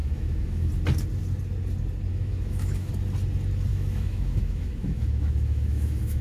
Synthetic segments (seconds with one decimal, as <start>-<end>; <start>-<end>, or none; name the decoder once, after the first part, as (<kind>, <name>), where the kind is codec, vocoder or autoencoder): 0.0-0.7 (autoencoder, DAC-VAE); 2.1-2.9; 3.7-6.2